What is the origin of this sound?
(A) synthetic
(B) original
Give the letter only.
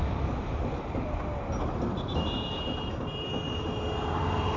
B